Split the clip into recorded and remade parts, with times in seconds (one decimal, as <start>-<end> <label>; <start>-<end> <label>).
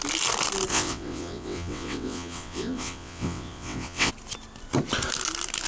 0.0-0.7 recorded; 0.7-4.1 remade; 4.1-5.7 recorded